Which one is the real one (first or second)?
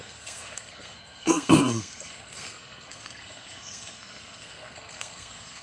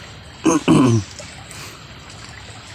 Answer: second